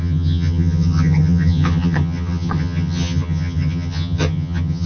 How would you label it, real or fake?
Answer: fake